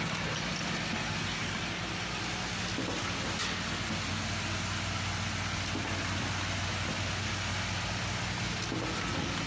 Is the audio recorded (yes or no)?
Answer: yes